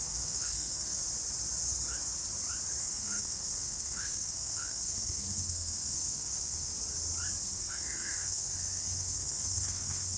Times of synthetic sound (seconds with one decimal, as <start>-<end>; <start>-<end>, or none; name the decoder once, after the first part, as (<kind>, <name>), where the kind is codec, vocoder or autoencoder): 0.0-1.0 (codec, SNAC); 2.8-6.7; 7.4-10.2